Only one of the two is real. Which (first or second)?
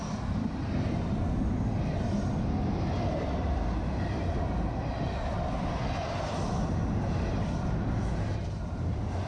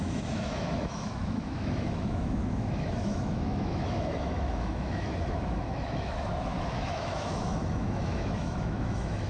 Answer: first